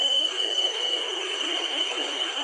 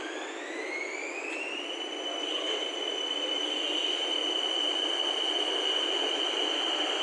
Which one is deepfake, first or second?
first